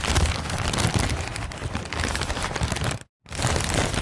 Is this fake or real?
real